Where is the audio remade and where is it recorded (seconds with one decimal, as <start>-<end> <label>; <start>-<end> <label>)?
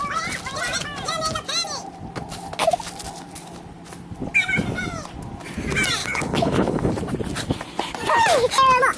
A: 0.0-6.0 recorded; 6.0-6.9 remade; 6.9-9.0 recorded